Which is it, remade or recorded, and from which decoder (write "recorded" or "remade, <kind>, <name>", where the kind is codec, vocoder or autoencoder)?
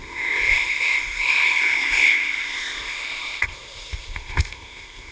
remade, codec, ZipCodec